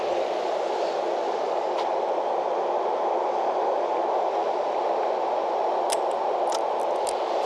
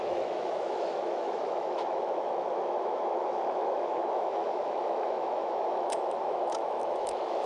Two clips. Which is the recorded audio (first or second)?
first